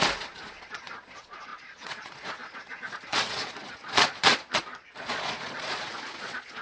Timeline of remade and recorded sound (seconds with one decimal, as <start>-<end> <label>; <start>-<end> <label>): 0.0-6.6 remade